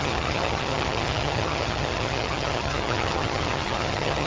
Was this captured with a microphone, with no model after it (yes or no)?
no